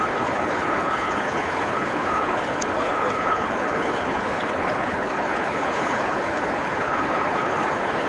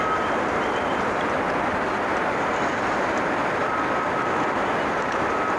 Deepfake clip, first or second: first